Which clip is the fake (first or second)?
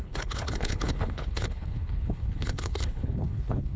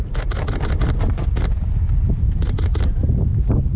first